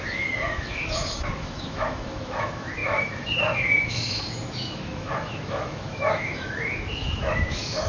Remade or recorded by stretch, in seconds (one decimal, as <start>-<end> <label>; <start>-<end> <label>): 0.0-7.9 remade